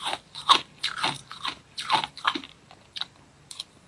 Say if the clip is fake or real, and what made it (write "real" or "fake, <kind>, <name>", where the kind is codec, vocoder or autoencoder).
real